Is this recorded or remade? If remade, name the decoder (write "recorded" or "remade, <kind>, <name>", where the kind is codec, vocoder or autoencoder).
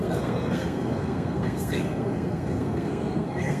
remade, codec, SNAC